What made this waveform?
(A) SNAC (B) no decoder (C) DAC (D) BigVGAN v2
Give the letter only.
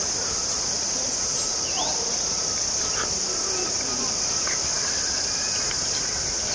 B